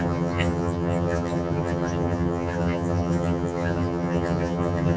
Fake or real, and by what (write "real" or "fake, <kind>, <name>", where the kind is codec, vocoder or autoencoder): fake, vocoder, HiFi-GAN